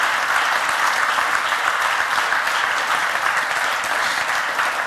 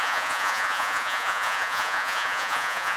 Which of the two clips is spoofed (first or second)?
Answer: second